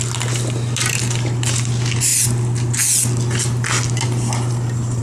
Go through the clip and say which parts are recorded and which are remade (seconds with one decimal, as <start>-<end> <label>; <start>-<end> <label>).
0.0-5.0 recorded